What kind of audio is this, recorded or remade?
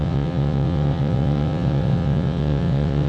remade